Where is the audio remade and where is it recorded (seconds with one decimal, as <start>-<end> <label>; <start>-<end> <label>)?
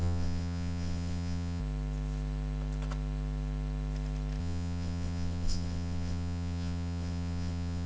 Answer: 0.0-1.6 remade; 1.6-4.4 recorded; 4.4-7.9 remade